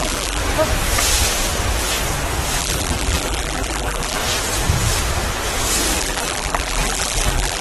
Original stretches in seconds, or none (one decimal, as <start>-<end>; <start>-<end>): 0.4-2.6; 4.2-6.0